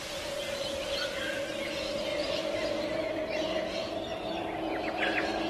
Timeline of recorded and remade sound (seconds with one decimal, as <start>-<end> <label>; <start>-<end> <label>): 0.0-2.1 recorded; 2.1-3.1 remade; 3.1-4.1 recorded; 4.1-4.8 remade; 4.8-5.5 recorded